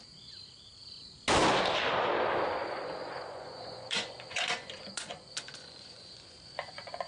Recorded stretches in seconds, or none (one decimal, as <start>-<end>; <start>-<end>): 0.0-2.6